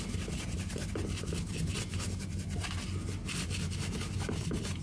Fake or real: real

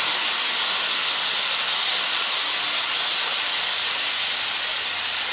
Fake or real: fake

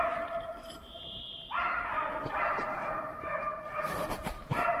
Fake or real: fake